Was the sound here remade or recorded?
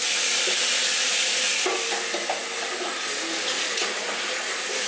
recorded